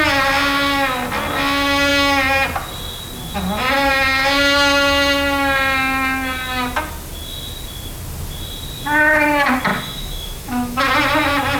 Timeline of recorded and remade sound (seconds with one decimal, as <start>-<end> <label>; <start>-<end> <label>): 0.0-9.7 recorded; 9.7-10.8 remade; 10.8-11.6 recorded